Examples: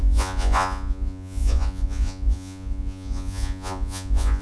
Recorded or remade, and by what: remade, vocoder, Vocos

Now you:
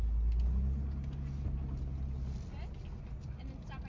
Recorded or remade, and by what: recorded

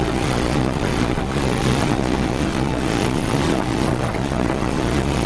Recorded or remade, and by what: remade, vocoder, Vocos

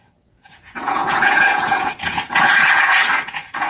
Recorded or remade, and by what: remade, vocoder, Vocos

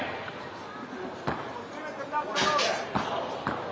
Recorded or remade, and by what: recorded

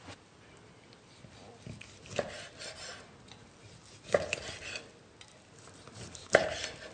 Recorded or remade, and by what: recorded